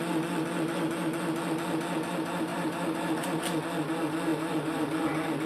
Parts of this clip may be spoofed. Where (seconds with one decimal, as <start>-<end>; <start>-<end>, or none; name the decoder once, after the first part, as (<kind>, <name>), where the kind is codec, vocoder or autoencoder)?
2.5-3.4 (vocoder, BigVGAN v2); 4.3-5.0